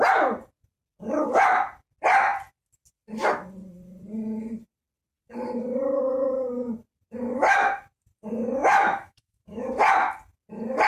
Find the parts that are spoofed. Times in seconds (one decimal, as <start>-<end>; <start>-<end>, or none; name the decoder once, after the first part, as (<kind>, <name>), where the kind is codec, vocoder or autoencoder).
8.6-9.6 (autoencoder, DAC-VAE)